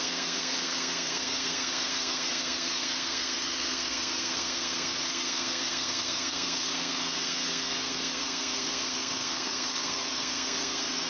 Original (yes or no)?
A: no